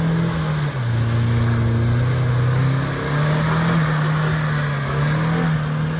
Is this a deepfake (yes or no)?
no